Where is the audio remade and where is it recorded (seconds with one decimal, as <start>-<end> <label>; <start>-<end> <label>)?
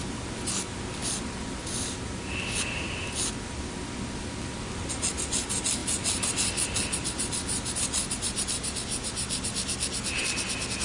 0.0-10.8 recorded